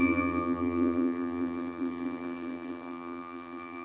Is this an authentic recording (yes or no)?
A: no